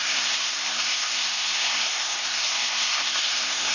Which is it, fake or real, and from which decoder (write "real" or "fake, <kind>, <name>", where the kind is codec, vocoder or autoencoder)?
fake, codec, SNAC